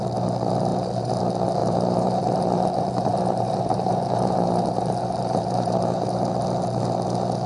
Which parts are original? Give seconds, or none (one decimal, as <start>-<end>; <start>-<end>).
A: 0.0-0.7; 1.2-1.6; 6.1-7.5